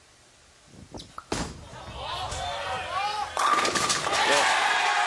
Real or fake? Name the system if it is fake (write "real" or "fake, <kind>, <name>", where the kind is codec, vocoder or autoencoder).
real